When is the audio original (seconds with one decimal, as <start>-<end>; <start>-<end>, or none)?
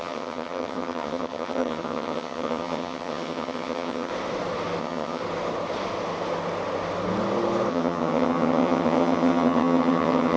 4.1-4.8; 5.2-7.7